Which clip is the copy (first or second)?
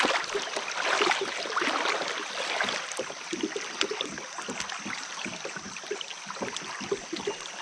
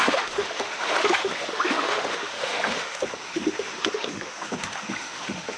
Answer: second